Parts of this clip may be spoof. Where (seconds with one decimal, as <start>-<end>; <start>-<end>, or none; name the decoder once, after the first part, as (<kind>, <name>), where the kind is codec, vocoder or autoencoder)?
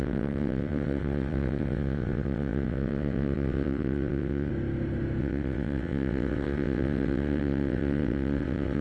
0.0-4.5 (vocoder, WaveNeXt); 5.2-8.8